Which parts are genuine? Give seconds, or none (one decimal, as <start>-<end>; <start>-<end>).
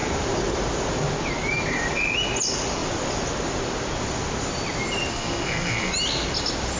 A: 0.0-5.1; 5.9-6.8